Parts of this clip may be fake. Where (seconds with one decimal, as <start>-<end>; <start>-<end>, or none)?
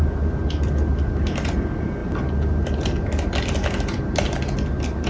none